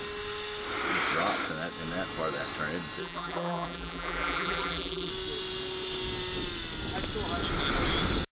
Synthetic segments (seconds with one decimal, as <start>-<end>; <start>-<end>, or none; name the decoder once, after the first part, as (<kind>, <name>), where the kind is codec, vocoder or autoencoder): 3.0-5.1 (vocoder, BigVGAN v2)